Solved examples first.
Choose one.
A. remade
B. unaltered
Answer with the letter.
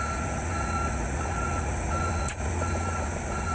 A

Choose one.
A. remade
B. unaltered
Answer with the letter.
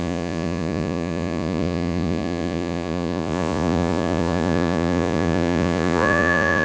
A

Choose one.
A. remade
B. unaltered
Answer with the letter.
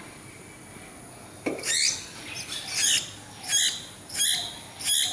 B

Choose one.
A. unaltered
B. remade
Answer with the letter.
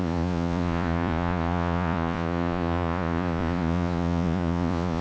B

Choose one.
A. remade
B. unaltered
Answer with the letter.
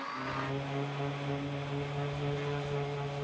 B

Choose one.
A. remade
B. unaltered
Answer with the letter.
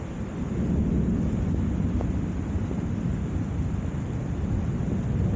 B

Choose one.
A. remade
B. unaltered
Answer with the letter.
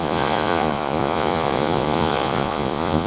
A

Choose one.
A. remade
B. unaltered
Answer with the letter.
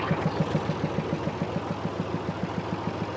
B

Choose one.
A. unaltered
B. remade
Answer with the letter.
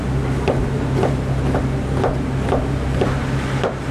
A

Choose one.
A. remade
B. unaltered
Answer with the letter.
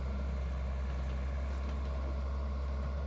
B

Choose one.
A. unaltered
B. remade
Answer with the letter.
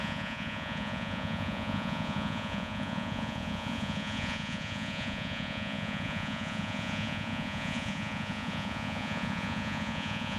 B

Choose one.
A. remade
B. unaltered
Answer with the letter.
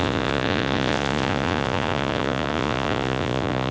A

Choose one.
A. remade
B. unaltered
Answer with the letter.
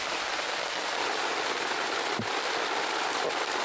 B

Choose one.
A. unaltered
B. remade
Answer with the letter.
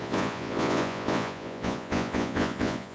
B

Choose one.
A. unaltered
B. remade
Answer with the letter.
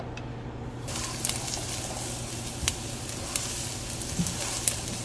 A